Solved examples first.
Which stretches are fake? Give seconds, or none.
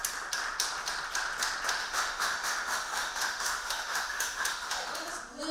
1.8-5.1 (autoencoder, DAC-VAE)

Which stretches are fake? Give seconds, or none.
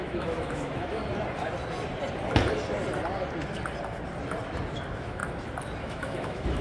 0.0-1.0 (autoencoder, DAC-VAE); 4.8-5.2; 5.8-6.6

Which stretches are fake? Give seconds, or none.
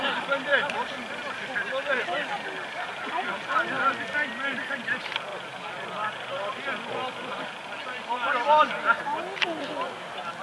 none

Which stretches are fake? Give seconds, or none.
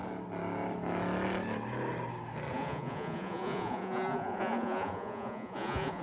2.5-6.0 (vocoder, Vocos)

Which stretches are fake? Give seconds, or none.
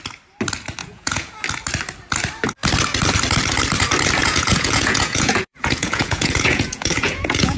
0.8-1.3 (vocoder, Vocos); 4.2-7.6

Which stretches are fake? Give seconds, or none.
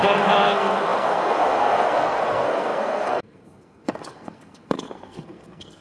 0.0-5.8 (codec, SNAC)